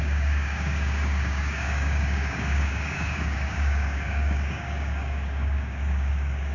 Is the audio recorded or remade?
remade